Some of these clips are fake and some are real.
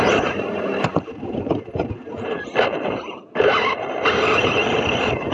fake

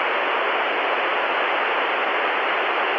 real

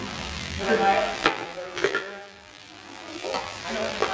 fake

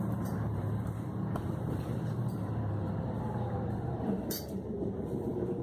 fake